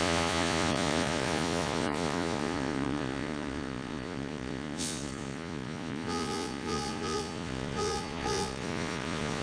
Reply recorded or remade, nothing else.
remade